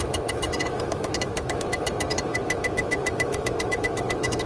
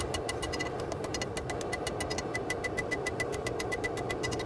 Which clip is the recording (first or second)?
second